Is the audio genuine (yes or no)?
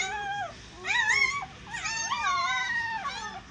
yes